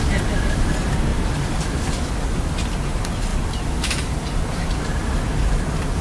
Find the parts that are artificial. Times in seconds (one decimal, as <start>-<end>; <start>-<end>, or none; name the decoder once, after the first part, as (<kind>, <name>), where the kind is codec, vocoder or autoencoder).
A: none